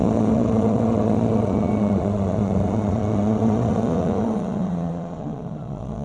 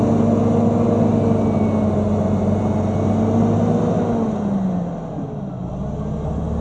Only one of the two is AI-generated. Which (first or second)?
first